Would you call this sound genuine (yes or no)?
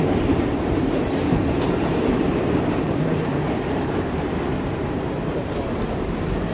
no